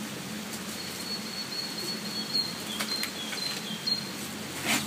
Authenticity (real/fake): real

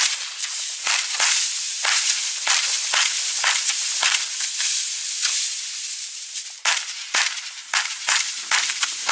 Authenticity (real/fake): fake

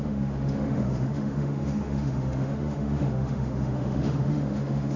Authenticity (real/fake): fake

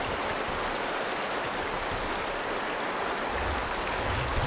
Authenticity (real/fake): real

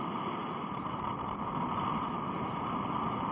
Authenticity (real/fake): real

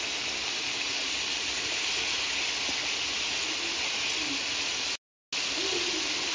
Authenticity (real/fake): real